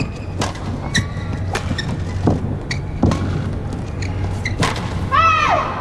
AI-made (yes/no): no